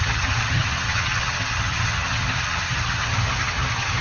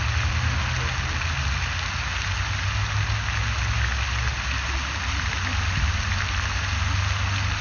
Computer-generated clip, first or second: first